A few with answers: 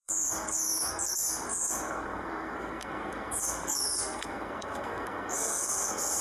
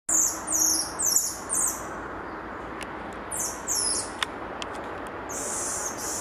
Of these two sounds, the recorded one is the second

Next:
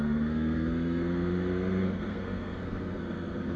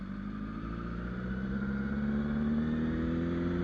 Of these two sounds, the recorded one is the second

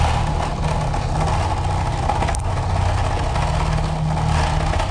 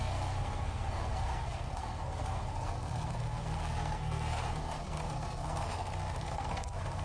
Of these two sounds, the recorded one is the first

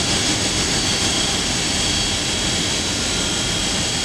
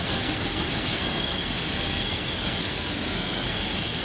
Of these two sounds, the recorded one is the first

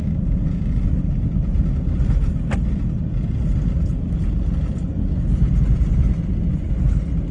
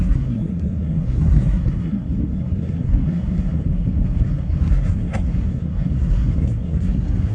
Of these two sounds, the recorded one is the first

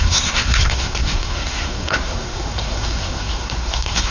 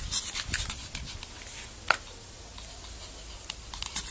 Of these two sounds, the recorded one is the second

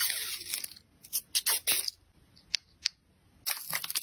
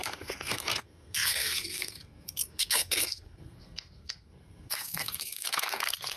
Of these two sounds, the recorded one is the first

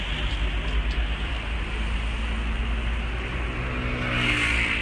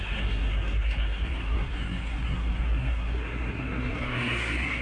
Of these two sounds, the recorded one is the first